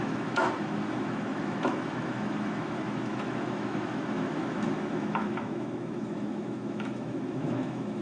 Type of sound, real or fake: fake